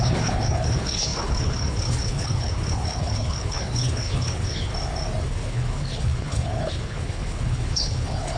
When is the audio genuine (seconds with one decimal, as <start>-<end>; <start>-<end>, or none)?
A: 4.7-5.2